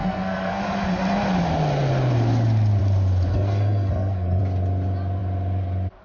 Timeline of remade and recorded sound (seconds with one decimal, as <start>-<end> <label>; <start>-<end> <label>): 0.0-0.6 remade; 0.6-3.3 recorded; 3.3-4.4 remade; 4.4-6.0 recorded